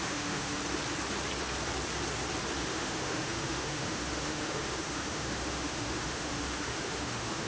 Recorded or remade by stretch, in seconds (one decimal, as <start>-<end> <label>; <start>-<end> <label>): 0.0-0.6 remade; 0.6-2.6 recorded; 2.6-7.5 remade